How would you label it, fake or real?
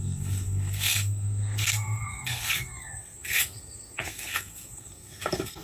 fake